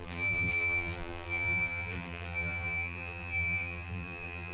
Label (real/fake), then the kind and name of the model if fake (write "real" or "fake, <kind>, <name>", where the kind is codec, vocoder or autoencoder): fake, vocoder, BigVGAN v2